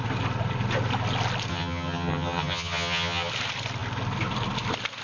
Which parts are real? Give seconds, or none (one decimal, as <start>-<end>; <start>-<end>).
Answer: 0.0-1.5; 3.3-5.0